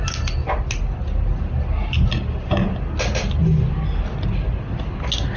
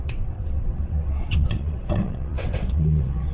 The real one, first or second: first